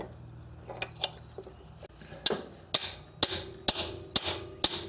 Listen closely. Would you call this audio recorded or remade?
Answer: recorded